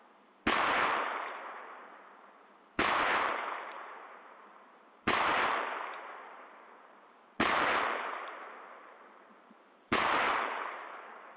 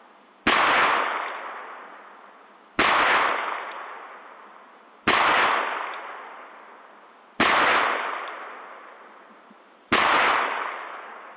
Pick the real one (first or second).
second